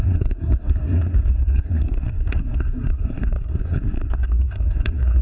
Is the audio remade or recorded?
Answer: remade